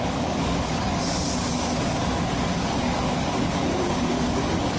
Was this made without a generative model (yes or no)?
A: no